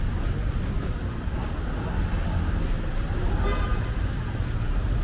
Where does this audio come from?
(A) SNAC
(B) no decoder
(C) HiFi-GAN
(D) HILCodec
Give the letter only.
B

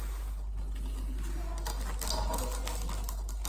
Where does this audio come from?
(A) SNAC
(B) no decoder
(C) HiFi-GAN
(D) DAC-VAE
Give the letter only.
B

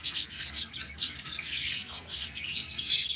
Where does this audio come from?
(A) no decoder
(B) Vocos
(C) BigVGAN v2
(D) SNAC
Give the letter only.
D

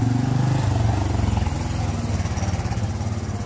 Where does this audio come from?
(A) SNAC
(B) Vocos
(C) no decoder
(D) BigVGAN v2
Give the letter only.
C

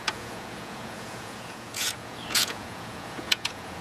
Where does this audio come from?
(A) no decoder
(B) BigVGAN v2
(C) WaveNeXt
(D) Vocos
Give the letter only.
D